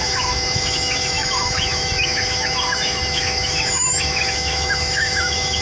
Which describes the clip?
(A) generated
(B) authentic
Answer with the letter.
A